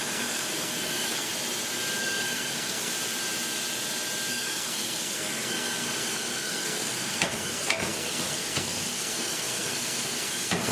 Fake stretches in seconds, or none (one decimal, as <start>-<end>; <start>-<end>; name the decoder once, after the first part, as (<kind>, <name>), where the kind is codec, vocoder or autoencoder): 0.0-1.3 (codec, SNAC); 2.0-2.9; 4.3-10.7